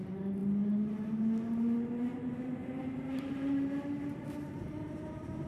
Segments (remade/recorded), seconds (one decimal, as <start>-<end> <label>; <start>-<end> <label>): 0.0-2.1 recorded; 2.1-5.5 remade